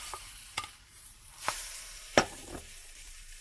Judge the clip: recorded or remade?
remade